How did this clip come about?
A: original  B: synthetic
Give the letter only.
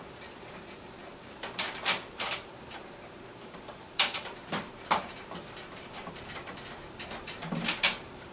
B